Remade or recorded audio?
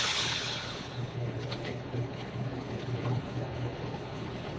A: remade